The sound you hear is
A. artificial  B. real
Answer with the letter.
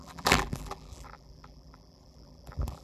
A